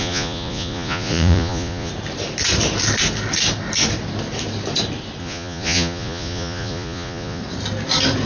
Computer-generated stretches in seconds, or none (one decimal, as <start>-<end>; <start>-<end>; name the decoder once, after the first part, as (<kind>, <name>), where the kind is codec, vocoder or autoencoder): 0.0-1.9 (vocoder, Vocos); 5.2-7.4